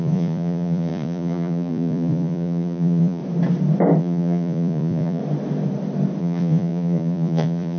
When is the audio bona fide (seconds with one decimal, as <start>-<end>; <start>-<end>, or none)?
3.2-4.0; 5.2-6.2